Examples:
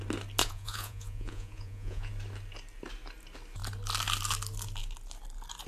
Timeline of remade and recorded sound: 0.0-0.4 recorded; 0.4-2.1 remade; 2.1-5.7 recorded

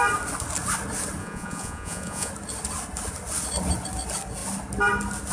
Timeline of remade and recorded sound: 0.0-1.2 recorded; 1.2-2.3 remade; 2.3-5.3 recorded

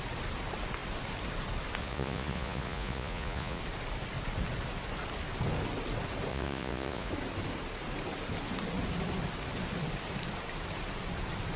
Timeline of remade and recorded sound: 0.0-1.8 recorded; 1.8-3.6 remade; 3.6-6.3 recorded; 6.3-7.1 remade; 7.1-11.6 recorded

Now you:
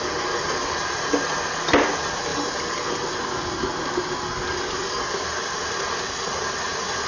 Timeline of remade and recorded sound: 0.0-7.1 recorded